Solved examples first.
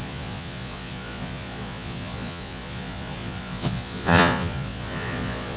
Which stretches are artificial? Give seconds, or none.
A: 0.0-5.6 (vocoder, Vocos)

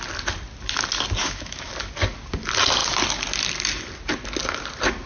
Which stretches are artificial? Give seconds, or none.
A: 1.2-1.7 (autoencoder, DAC-VAE)